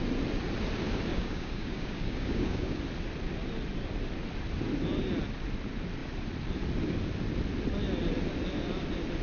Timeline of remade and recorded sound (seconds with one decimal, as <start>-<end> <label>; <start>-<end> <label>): 0.0-1.1 recorded; 1.1-2.8 remade; 2.8-9.2 recorded